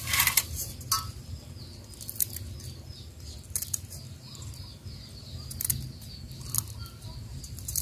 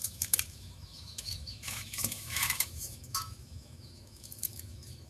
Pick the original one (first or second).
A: first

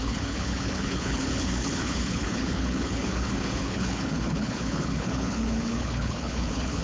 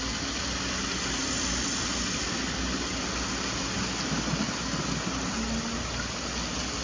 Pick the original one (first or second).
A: second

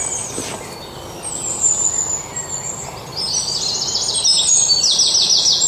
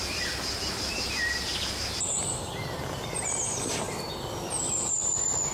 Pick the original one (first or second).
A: first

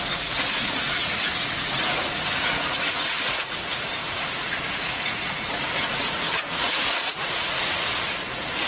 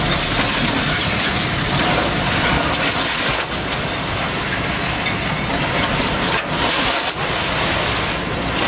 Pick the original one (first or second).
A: second